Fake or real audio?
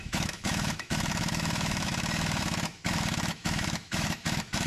fake